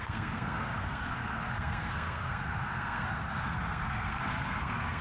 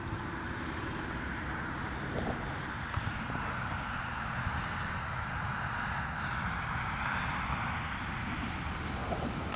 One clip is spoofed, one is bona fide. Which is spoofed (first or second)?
first